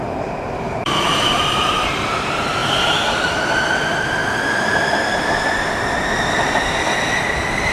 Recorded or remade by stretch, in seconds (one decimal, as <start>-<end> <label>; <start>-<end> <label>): 0.0-2.6 remade; 2.6-3.7 recorded; 3.7-4.2 remade; 4.2-7.7 recorded